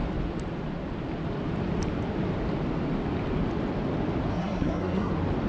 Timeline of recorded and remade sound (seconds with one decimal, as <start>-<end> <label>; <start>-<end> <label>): 0.0-4.3 recorded; 4.3-5.1 remade; 5.1-5.5 recorded